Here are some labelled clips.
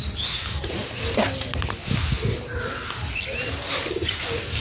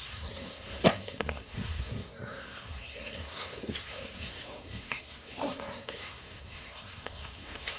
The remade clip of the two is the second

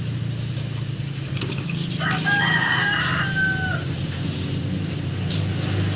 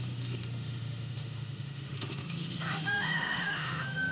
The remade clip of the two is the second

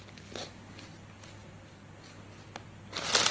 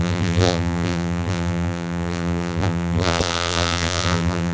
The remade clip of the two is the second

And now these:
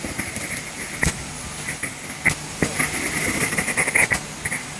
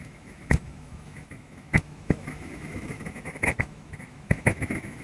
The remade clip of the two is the second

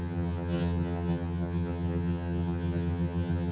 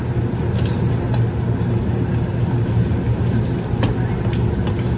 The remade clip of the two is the first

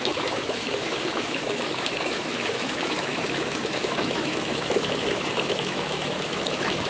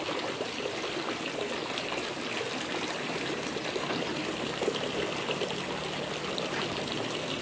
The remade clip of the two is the first